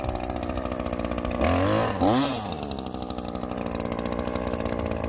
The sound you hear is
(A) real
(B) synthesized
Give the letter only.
A